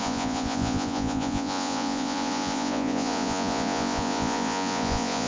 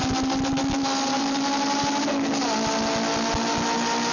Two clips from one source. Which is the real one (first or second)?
second